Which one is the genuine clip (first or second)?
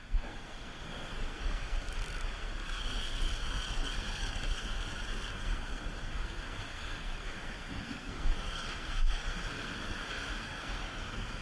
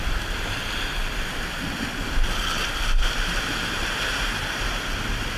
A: second